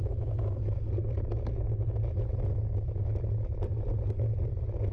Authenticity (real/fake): real